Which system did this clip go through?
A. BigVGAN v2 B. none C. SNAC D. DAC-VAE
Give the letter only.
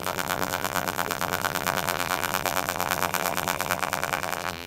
A